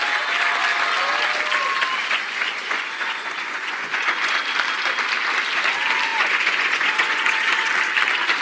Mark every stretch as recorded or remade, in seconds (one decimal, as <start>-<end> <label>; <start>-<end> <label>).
0.0-2.0 recorded; 2.0-4.4 remade; 4.4-6.1 recorded; 6.1-7.7 remade; 7.7-8.4 recorded